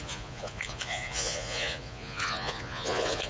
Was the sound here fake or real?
fake